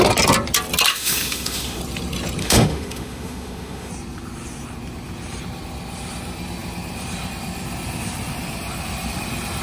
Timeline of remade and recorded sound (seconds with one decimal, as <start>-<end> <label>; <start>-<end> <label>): 0.0-0.9 recorded; 0.9-1.8 remade; 1.8-2.4 recorded; 2.4-3.9 remade; 3.9-9.6 recorded